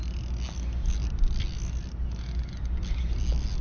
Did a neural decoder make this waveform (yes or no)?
no